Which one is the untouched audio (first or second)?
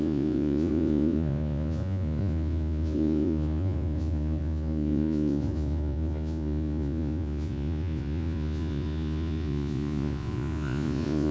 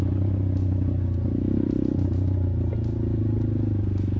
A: second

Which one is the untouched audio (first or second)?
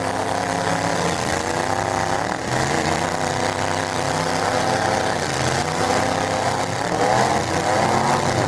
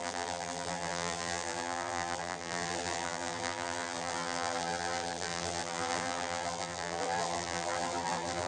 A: first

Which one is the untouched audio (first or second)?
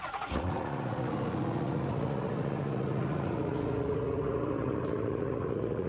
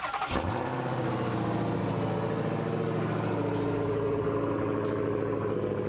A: second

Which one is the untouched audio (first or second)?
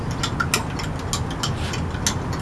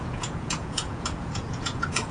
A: first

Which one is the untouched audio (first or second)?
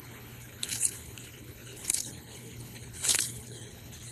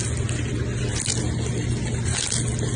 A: second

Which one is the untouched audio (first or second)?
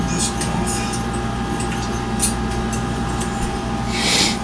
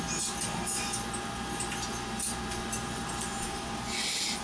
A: first